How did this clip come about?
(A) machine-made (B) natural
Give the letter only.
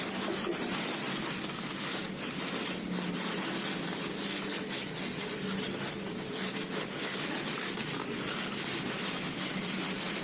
B